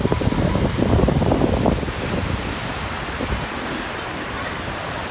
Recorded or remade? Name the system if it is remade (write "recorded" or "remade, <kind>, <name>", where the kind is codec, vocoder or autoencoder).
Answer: recorded